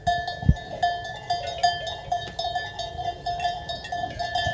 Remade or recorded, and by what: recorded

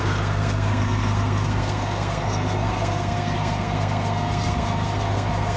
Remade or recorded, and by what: remade, codec, SNAC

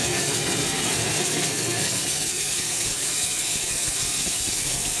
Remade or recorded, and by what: remade, codec, SNAC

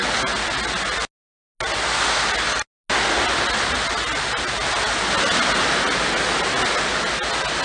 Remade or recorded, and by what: recorded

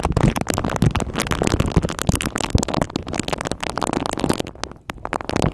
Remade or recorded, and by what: recorded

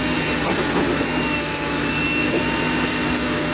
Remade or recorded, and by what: recorded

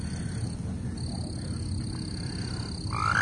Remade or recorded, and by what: recorded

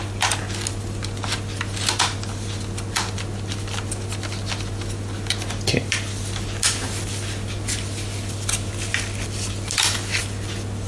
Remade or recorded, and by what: recorded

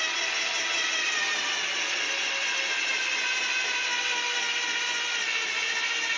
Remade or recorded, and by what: recorded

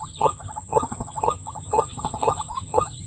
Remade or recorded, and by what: remade, vocoder, HiFi-GAN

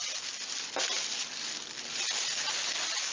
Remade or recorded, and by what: recorded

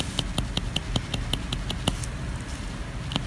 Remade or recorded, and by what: recorded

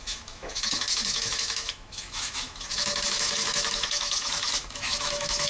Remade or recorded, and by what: remade, autoencoder, DAC-VAE